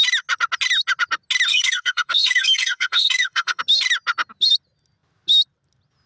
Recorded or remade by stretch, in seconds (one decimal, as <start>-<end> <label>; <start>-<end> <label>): 0.0-1.5 recorded; 1.5-3.6 remade; 3.6-6.1 recorded

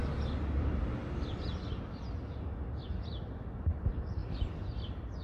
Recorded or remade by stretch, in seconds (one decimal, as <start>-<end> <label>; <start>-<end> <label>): 0.0-5.2 recorded

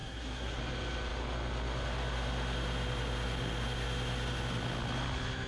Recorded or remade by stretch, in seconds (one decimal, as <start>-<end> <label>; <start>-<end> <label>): 0.0-0.6 remade; 0.6-5.5 recorded

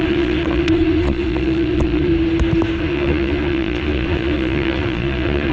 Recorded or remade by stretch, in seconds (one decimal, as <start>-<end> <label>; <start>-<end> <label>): 0.0-2.1 remade; 2.1-2.8 recorded; 2.8-5.5 remade

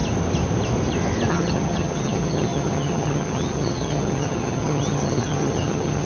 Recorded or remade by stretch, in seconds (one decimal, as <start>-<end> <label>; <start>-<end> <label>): 0.0-1.3 recorded; 1.3-6.1 remade